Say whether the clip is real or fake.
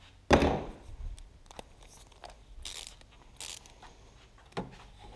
real